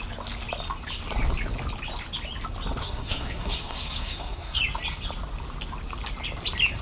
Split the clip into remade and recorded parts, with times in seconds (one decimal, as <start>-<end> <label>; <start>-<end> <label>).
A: 0.0-2.8 recorded; 2.8-4.6 remade; 4.6-6.8 recorded